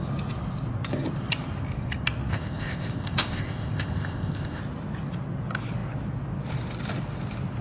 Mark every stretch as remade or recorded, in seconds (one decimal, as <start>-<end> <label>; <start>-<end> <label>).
0.0-2.3 recorded; 2.3-4.6 remade; 4.6-7.6 recorded